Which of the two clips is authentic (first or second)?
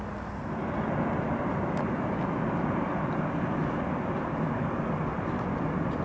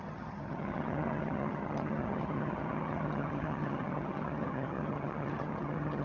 first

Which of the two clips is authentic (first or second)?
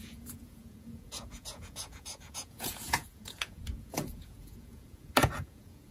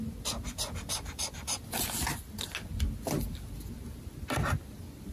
second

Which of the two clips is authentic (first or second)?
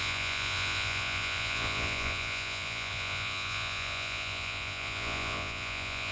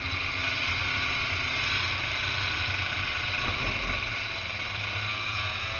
second